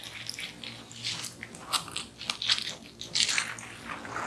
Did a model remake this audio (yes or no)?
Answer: no